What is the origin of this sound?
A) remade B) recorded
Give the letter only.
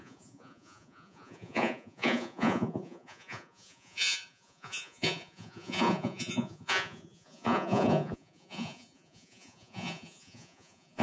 A